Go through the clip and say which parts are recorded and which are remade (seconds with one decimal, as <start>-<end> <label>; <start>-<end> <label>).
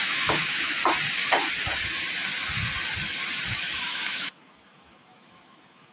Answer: 0.0-0.8 remade; 0.8-3.5 recorded; 3.5-5.9 remade